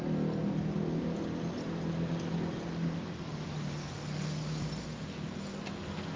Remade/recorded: recorded